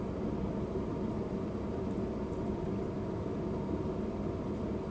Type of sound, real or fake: real